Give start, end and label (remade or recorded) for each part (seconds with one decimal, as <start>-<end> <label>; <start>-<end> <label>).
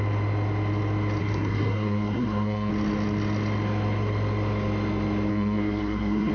0.0-1.2 recorded; 1.2-2.7 remade; 2.7-5.3 recorded; 5.3-6.3 remade